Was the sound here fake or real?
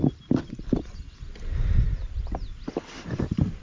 real